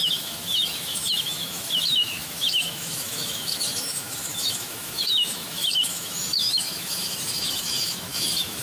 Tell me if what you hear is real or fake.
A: fake